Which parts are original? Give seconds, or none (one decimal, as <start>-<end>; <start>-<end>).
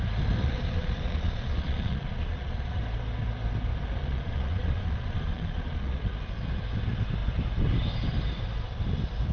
0.0-0.4; 2.8-4.0; 6.1-9.3